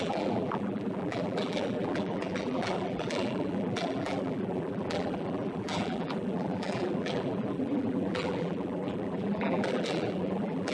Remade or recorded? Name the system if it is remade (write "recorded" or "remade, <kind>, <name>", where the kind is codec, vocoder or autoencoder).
remade, vocoder, BigVGAN v2